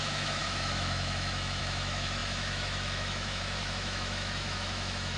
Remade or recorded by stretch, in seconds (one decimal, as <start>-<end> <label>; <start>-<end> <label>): 0.0-5.2 remade